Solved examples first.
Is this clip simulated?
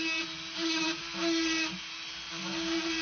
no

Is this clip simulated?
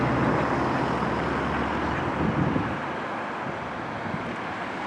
no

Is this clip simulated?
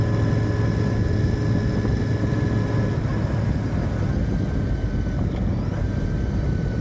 no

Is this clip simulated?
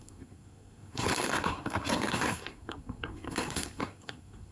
yes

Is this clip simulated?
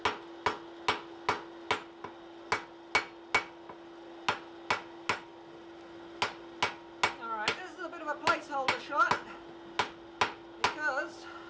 no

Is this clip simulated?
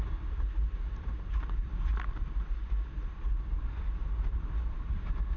no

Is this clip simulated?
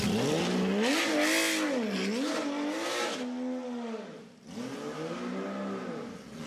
no